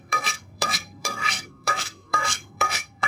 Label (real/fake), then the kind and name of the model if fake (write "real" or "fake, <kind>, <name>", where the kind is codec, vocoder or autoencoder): fake, codec, SNAC